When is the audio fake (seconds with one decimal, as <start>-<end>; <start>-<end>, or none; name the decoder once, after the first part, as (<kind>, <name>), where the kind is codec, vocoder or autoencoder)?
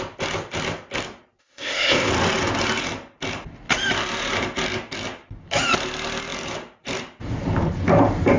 1.4-2.1 (codec, ZipCodec)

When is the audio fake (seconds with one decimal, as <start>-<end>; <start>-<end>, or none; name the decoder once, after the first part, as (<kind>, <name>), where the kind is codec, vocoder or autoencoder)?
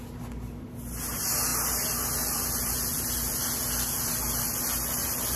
none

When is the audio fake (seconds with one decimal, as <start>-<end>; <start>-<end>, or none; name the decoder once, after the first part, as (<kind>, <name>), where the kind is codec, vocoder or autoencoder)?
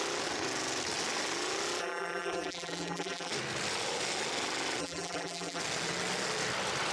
1.8-3.3 (vocoder, BigVGAN v2); 4.8-5.6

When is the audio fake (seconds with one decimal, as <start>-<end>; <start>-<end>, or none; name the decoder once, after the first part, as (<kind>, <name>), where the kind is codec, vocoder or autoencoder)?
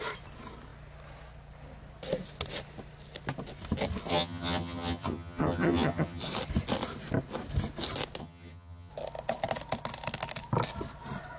4.1-6.2 (vocoder, HiFi-GAN); 8.2-8.9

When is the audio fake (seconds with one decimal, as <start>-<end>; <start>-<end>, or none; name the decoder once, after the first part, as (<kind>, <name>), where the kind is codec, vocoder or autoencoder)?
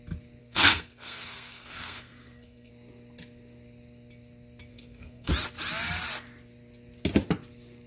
0.4-2.7 (codec, SNAC); 4.7-5.3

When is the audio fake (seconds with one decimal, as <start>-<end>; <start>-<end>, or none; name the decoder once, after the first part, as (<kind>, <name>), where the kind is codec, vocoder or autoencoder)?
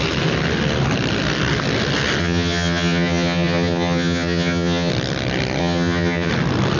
2.2-4.9 (vocoder, HiFi-GAN); 5.6-6.3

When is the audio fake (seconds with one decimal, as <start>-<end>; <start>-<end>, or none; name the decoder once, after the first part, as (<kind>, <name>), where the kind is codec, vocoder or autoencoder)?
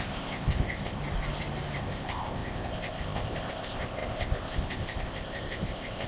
0.0-1.0 (codec, ZipCodec); 1.8-6.1